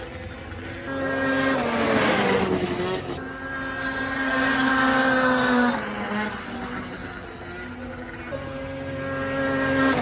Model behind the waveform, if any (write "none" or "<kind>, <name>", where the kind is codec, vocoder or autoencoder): none